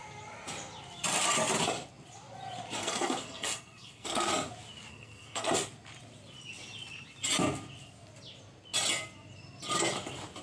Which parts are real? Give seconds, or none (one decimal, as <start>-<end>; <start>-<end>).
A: 0.0-2.8; 4.3-4.9; 5.5-10.4